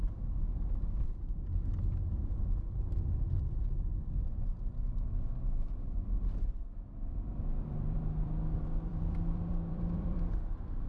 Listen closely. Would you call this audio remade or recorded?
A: remade